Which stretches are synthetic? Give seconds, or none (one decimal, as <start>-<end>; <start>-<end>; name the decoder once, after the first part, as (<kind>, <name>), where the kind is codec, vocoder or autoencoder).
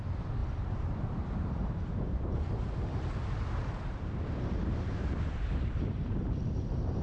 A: 0.0-7.0 (vocoder, BigVGAN v2)